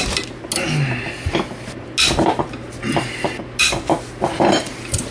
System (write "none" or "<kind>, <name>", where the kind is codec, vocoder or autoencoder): none